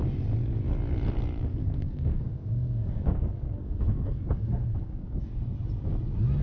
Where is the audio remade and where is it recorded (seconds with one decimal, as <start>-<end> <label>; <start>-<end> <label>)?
0.0-1.5 recorded; 1.5-5.2 remade; 5.2-6.4 recorded